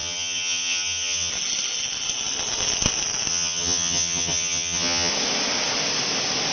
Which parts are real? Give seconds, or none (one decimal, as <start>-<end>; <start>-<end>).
1.3-3.3; 5.1-6.5